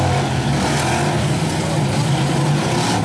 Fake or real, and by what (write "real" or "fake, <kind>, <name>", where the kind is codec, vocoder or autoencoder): real